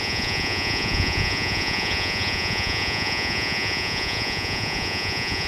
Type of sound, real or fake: fake